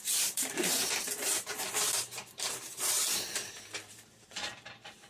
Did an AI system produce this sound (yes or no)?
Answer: yes